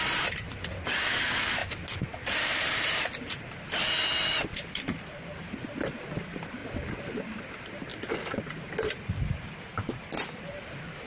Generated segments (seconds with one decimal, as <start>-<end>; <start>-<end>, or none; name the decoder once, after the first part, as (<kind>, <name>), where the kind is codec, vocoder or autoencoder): 1.6-3.8 (vocoder, BigVGAN v2); 6.6-7.4